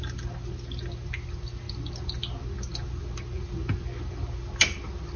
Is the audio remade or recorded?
recorded